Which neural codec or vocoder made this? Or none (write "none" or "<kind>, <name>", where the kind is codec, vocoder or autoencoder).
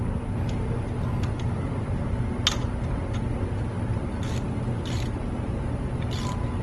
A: none